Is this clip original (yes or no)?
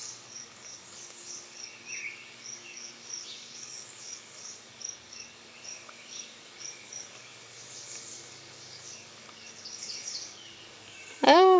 no